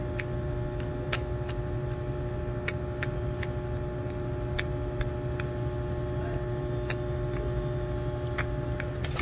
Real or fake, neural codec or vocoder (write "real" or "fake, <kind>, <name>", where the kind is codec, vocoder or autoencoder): real